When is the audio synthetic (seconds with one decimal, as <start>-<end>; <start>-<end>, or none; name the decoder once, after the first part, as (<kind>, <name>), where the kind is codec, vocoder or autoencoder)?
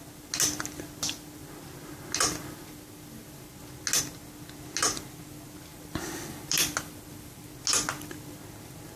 5.7-7.5 (vocoder, BigVGAN v2)